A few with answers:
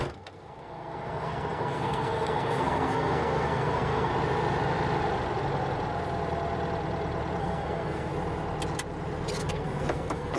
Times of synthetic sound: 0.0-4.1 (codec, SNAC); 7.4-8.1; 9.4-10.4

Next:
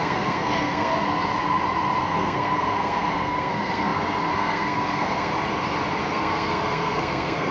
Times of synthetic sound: 0.0-0.9 (codec, SNAC); 2.0-5.3; 6.0-7.5

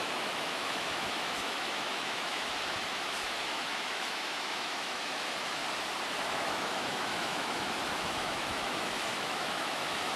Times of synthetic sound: 0.0-5.6 (autoencoder, DAC-VAE); 6.2-10.2